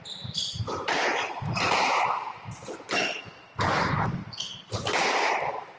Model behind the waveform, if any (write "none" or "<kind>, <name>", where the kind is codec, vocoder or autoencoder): none